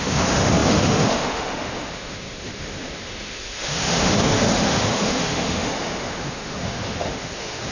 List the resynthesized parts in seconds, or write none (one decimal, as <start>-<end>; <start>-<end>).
0.0-7.7